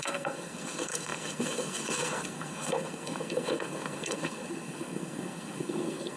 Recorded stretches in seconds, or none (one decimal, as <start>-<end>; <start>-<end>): none